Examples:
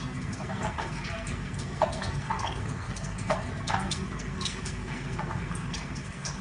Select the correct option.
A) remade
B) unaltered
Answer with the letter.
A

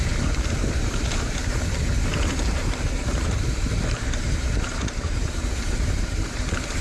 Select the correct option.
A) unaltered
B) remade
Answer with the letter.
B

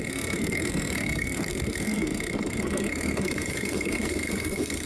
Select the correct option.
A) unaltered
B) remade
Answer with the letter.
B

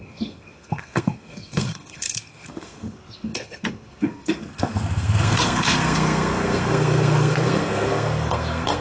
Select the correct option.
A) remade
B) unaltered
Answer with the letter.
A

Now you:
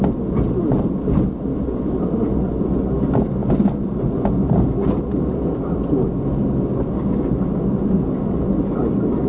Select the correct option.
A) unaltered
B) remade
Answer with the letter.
A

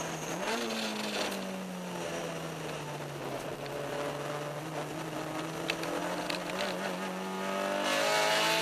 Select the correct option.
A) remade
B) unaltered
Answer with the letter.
B